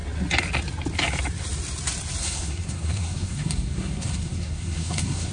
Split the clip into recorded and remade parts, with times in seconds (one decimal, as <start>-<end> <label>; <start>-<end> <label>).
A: 0.0-2.2 recorded; 2.2-5.3 remade